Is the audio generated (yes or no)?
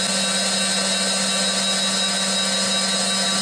no